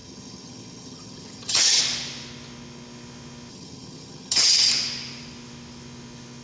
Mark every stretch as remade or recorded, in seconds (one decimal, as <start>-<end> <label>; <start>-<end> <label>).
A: 0.0-1.8 remade; 1.8-3.5 recorded; 3.5-4.7 remade; 4.7-6.4 recorded

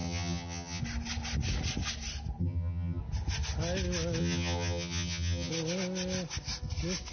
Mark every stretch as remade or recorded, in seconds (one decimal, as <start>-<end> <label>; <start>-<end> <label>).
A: 0.0-0.8 remade; 0.8-2.4 recorded; 2.4-3.0 remade; 3.0-4.2 recorded; 4.2-5.5 remade; 5.5-7.1 recorded

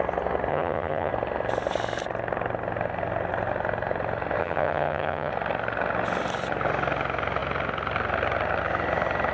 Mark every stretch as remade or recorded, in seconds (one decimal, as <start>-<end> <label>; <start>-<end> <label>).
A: 0.0-0.5 recorded; 0.5-1.1 remade; 1.1-4.4 recorded; 4.4-5.3 remade; 5.3-9.3 recorded

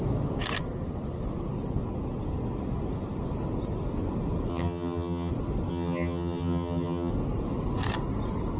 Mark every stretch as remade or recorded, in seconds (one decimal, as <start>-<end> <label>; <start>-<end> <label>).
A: 0.0-4.5 recorded; 4.5-5.3 remade; 5.3-5.7 recorded; 5.7-7.1 remade; 7.1-8.6 recorded

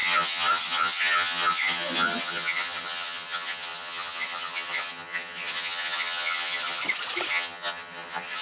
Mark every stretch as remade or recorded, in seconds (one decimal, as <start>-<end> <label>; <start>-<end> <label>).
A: 0.0-6.8 remade; 6.8-7.3 recorded; 7.3-8.4 remade

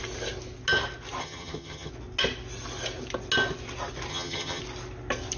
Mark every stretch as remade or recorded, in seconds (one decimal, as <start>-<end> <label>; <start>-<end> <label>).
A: 0.0-1.2 recorded; 1.2-1.9 remade; 1.9-4.1 recorded; 4.1-4.6 remade; 4.6-5.4 recorded

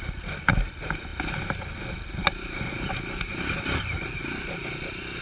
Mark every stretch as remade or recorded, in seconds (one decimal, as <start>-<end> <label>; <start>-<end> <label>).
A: 0.0-5.2 recorded

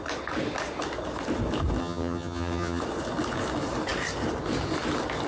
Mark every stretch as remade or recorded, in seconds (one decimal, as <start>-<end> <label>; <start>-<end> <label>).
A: 0.0-1.8 recorded; 1.8-2.8 remade; 2.8-5.3 recorded